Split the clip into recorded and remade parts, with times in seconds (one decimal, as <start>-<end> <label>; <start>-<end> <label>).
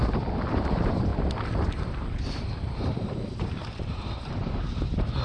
0.0-0.5 recorded; 0.5-1.1 remade; 1.1-2.2 recorded; 2.2-5.2 remade